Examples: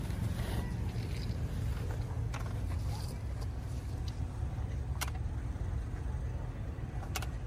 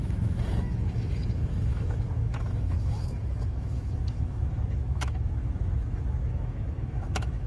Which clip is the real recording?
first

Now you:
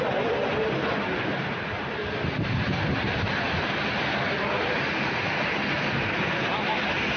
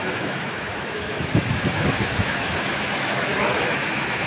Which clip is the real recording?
first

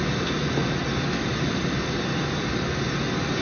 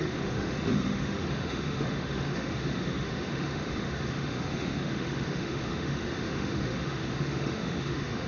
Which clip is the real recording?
first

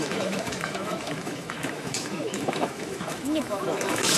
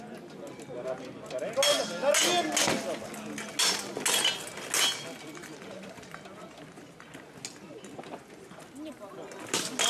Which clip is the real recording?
second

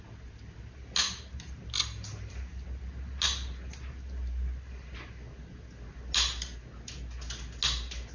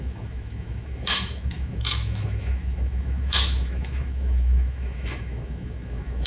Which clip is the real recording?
first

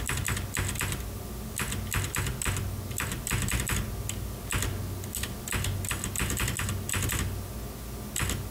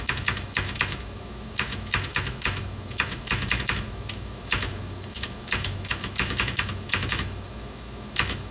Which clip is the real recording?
first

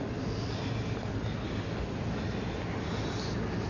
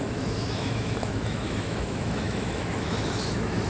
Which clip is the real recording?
first